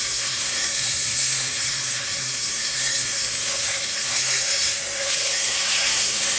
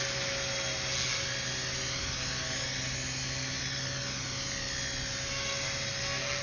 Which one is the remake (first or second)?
first